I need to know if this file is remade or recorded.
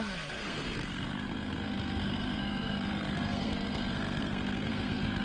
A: remade